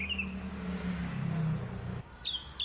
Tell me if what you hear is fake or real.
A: real